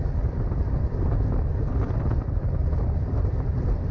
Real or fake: fake